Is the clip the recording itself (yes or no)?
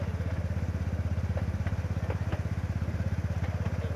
yes